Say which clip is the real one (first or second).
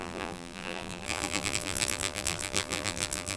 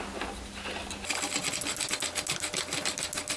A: second